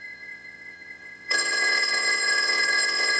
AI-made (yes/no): yes